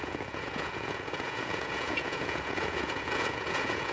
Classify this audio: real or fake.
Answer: fake